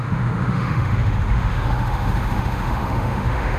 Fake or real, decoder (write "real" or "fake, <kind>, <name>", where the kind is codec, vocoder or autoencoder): fake, autoencoder, DAC-VAE